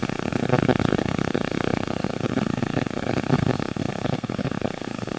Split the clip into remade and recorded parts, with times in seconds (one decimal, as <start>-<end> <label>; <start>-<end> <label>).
0.0-5.2 remade